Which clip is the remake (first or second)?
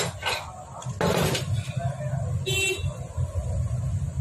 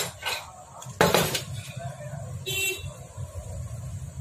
second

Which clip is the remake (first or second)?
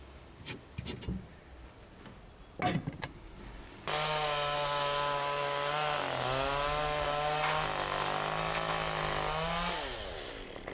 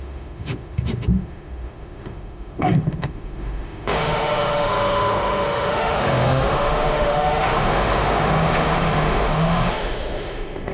second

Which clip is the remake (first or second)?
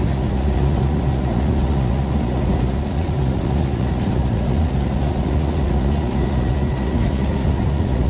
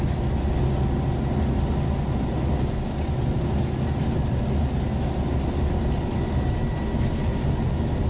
first